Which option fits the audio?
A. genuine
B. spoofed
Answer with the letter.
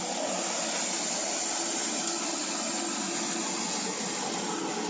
A